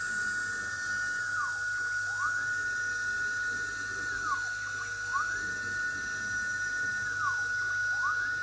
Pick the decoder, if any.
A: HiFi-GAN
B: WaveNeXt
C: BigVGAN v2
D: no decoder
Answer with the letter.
D